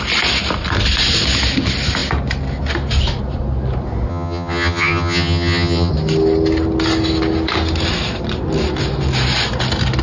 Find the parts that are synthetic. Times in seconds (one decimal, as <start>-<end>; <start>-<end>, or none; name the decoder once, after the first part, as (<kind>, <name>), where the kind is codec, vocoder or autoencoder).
4.1-5.9 (vocoder, HiFi-GAN)